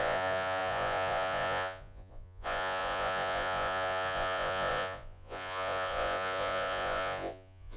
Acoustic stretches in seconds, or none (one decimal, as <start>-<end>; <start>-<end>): none